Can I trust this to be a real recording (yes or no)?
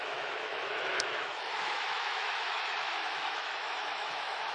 no